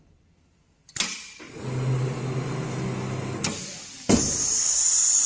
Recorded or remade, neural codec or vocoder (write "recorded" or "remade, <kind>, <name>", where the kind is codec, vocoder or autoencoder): recorded